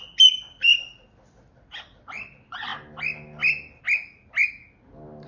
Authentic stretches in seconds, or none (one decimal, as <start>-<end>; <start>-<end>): 0.0-5.3